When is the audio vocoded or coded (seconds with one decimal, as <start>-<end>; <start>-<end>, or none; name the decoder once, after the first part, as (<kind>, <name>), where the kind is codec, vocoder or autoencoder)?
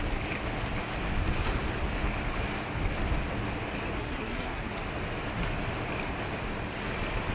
4.0-4.7 (codec, SNAC)